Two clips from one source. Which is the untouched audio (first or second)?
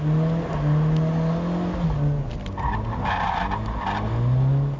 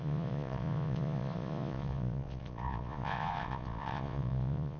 first